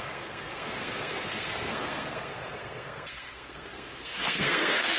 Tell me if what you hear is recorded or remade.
remade